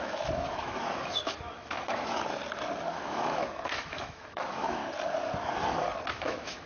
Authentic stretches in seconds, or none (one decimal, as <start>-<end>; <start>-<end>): 2.4-2.9; 4.8-6.1